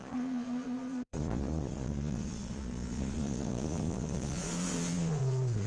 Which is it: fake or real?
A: fake